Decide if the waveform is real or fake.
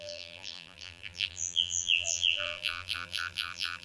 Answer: fake